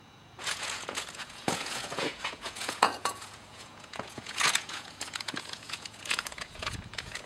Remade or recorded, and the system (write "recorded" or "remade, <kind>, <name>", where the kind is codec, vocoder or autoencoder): remade, vocoder, Vocos